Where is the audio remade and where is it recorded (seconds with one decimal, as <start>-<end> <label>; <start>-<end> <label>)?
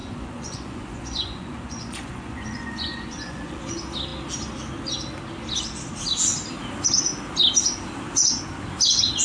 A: 0.0-3.6 remade; 3.6-9.2 recorded